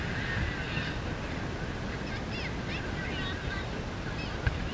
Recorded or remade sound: recorded